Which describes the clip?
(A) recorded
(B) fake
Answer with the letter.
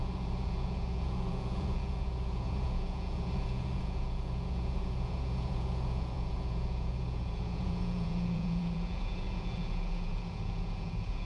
B